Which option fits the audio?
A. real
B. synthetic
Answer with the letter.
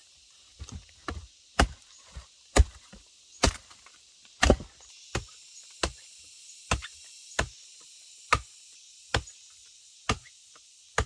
A